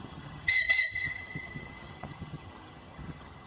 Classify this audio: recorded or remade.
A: remade